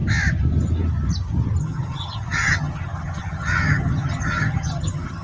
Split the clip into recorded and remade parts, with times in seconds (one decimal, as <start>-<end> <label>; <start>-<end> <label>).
0.0-1.6 recorded; 1.6-5.2 remade